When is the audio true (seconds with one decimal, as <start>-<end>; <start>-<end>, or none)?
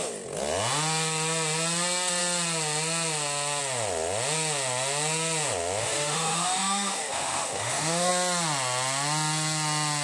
0.0-5.8; 8.1-10.0